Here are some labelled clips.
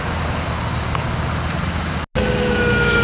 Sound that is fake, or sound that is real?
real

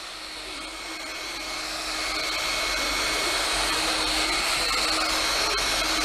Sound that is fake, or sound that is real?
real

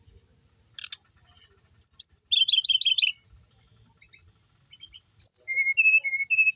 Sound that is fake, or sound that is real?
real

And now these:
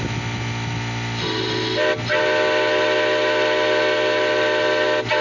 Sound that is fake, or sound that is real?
real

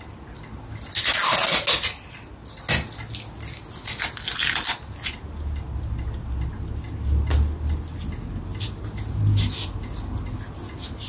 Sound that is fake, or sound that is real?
real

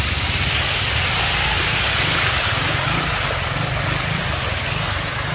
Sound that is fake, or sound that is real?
real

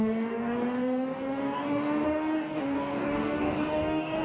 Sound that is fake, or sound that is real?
fake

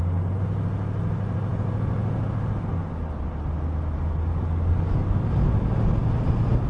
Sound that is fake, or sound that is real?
real